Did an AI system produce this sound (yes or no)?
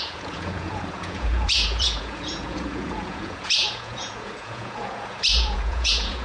yes